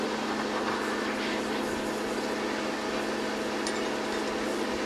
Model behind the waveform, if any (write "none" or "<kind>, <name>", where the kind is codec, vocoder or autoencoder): none